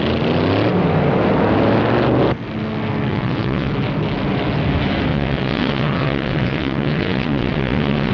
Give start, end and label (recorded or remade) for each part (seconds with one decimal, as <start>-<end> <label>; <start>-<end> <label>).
0.0-3.1 recorded; 3.1-3.7 remade; 3.7-5.1 recorded; 5.1-8.1 remade

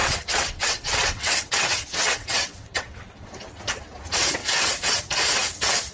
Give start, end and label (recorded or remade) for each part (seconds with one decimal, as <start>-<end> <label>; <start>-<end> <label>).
0.0-3.4 remade; 3.4-4.4 recorded; 4.4-5.0 remade; 5.0-5.9 recorded

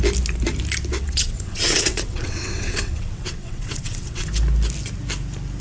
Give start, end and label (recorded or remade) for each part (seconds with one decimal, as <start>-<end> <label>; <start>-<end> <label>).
0.0-0.9 recorded; 0.9-4.3 remade; 4.3-5.6 recorded